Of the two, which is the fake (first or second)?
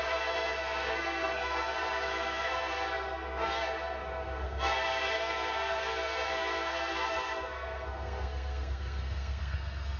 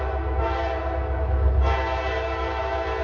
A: first